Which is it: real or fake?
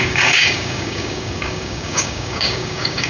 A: fake